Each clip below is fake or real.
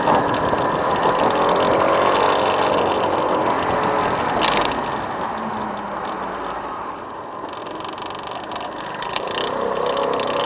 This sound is real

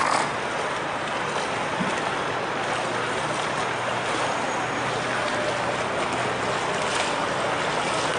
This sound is real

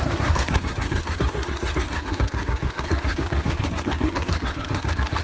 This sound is fake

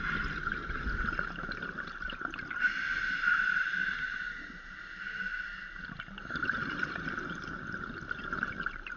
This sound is real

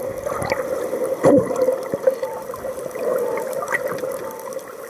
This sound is real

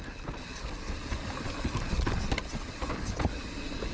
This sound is real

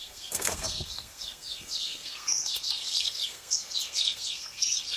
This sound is fake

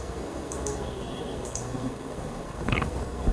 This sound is fake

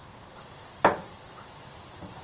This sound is real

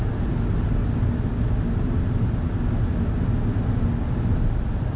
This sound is real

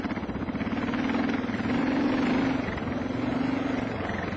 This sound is real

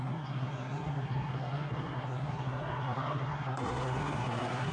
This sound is fake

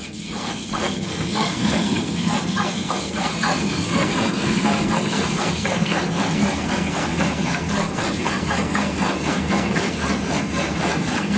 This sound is fake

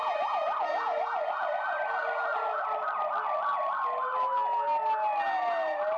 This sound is real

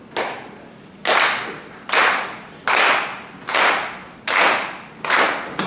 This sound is real